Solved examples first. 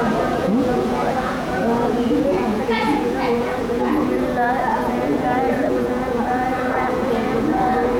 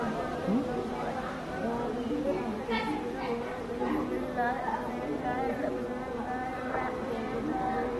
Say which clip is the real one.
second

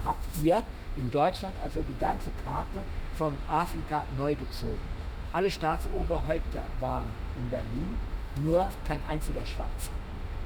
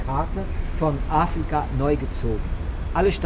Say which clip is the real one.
second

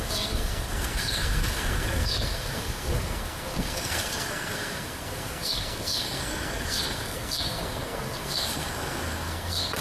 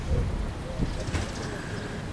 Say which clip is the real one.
second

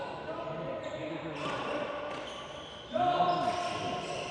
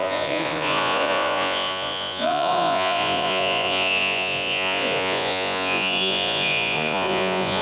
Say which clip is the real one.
first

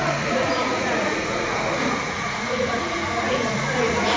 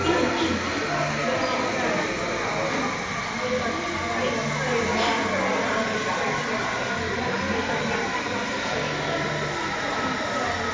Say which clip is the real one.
second